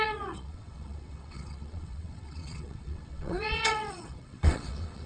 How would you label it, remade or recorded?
remade